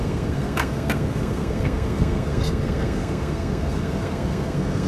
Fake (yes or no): yes